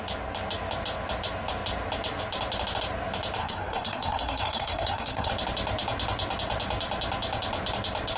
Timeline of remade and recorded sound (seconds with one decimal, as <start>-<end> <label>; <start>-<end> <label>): 0.0-3.4 recorded; 3.4-5.3 remade; 5.3-8.2 recorded

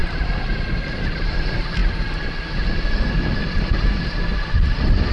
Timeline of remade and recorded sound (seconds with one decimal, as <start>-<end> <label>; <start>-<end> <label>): 0.0-1.8 remade; 1.8-5.1 recorded

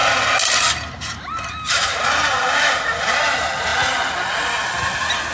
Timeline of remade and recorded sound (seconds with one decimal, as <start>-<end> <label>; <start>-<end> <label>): 0.0-5.3 recorded